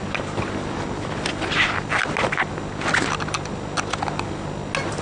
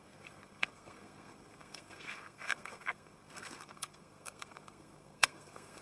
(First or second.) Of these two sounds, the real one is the first